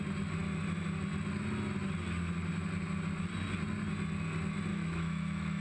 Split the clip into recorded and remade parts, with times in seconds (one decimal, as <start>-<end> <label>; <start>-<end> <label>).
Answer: 0.0-4.7 recorded; 4.7-5.6 remade